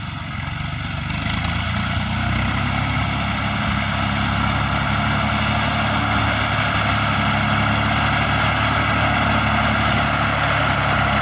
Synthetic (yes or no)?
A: no